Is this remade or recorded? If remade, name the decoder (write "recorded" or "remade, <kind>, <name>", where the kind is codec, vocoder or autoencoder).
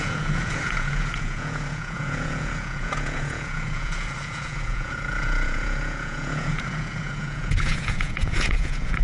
remade, vocoder, Vocos